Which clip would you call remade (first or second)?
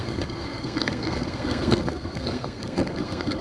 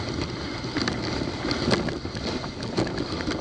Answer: first